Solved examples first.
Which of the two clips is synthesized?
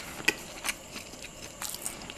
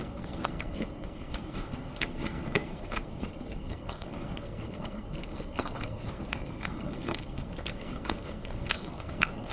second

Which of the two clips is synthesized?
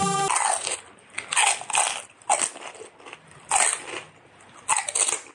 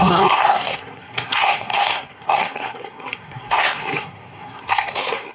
second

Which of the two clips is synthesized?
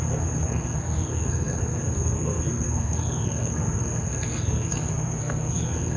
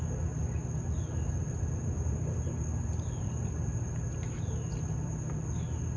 first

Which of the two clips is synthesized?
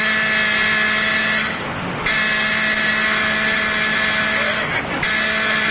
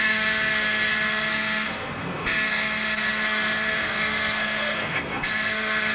second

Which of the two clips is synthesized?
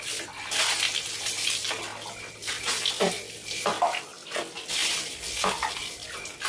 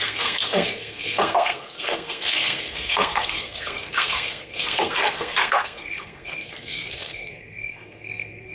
second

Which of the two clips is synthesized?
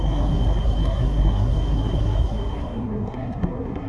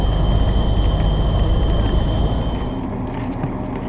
first